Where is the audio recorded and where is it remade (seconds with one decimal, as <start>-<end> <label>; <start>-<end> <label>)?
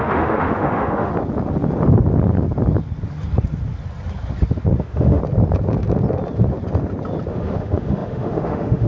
0.0-1.1 remade; 1.1-4.8 recorded; 4.8-5.2 remade; 5.2-7.3 recorded; 7.3-8.9 remade